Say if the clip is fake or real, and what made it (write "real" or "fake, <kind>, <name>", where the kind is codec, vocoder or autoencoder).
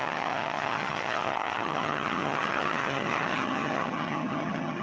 fake, vocoder, HiFi-GAN